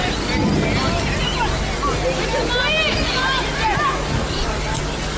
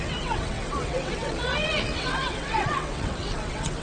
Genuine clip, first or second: first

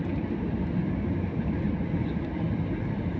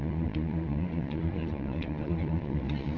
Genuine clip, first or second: first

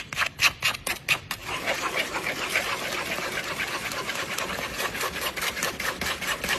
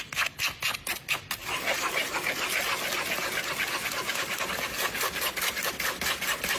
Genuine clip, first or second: second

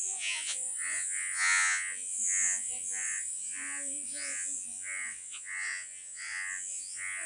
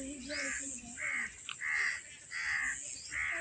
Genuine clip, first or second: second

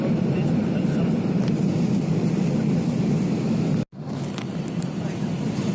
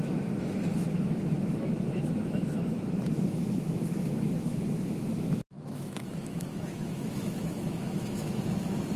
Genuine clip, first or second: first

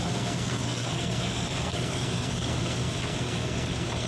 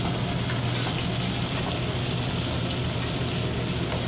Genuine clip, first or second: second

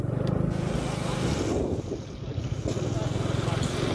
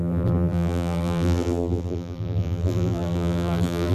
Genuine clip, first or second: first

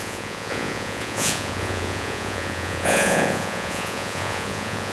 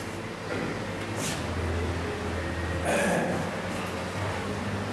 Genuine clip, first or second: second